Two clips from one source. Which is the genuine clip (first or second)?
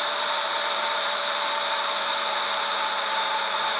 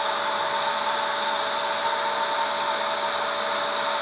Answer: second